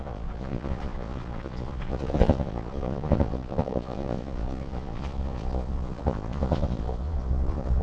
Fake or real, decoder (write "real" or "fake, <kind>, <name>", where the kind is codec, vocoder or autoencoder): fake, vocoder, Vocos